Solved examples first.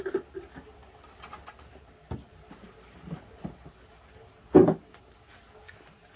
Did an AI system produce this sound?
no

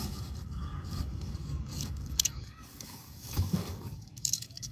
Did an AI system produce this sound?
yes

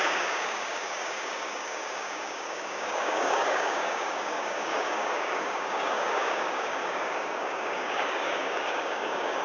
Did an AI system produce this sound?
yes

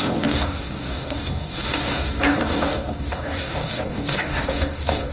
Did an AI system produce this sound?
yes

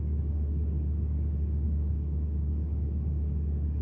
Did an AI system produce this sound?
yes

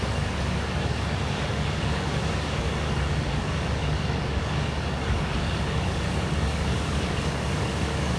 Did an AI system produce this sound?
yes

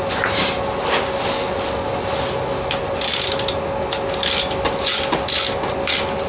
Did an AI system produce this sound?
no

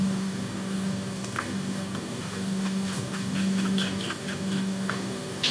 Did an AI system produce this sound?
yes